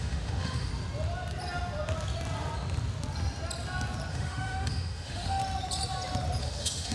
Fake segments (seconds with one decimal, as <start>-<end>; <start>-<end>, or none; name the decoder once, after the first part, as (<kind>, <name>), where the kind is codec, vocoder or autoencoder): 0.0-0.7 (autoencoder, DAC-VAE); 4.1-5.4; 6.4-6.9